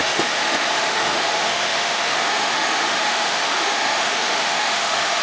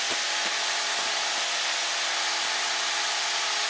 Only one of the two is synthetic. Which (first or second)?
first